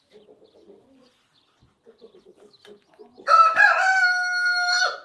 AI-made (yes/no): no